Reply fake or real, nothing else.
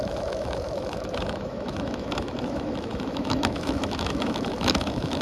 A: fake